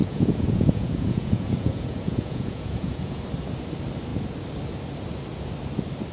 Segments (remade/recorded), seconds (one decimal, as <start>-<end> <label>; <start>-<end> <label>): 0.0-3.2 remade; 3.2-6.1 recorded